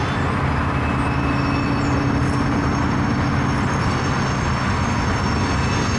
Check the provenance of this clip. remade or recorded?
recorded